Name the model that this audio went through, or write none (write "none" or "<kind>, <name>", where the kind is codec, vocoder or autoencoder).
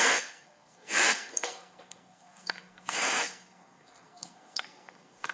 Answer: codec, SNAC